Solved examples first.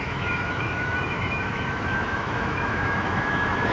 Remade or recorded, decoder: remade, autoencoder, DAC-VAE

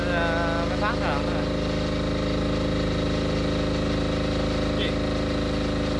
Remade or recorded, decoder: recorded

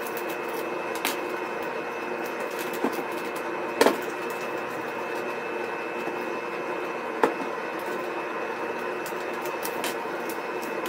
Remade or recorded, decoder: recorded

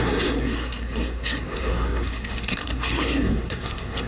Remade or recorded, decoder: remade, codec, SNAC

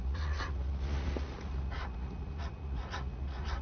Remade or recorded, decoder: remade, vocoder, Vocos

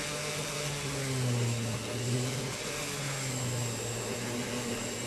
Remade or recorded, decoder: recorded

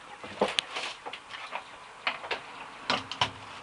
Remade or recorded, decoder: recorded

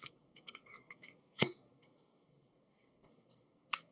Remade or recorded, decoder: remade, codec, SNAC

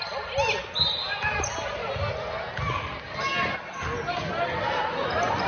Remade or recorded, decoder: recorded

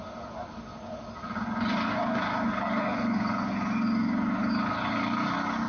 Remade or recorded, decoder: recorded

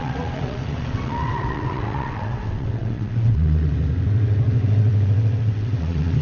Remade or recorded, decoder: remade, vocoder, WaveNeXt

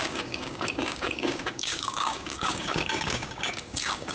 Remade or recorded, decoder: remade, codec, DAC